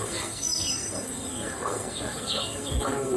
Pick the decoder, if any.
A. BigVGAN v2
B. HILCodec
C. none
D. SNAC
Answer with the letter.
D